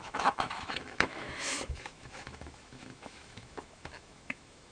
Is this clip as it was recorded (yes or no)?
no